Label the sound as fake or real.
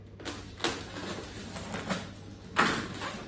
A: real